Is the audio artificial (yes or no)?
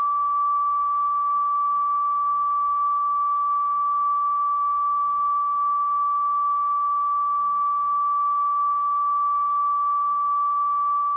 yes